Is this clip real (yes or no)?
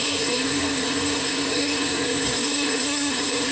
no